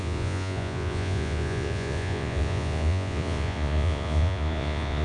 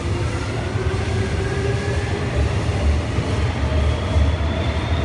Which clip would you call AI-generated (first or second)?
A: first